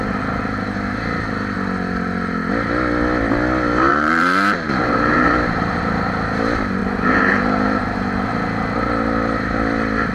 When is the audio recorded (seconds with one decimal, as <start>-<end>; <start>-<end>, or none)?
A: 0.0-3.9; 6.1-6.8; 8.4-10.1

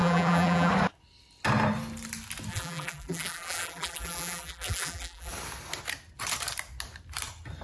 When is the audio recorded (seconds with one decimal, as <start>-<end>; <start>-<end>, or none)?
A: 0.7-2.5; 5.3-7.6